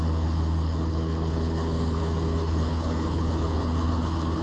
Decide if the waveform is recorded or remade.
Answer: remade